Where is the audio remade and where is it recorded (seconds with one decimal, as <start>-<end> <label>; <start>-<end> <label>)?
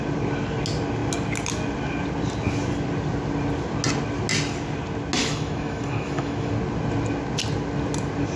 0.0-5.2 recorded; 5.2-6.5 remade; 6.5-8.4 recorded